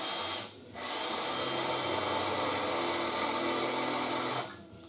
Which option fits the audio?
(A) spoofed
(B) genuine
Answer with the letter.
B